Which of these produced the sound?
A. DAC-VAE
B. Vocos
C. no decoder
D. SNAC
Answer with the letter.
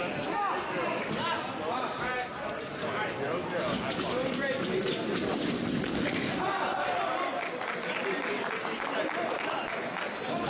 C